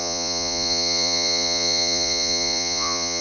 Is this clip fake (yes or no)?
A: yes